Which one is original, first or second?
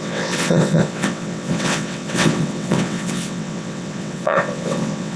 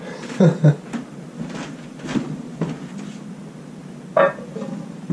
second